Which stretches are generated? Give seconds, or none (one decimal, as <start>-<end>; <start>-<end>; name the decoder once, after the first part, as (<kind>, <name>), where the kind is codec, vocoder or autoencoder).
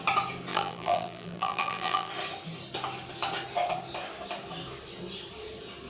0.5-2.1 (vocoder, BigVGAN v2)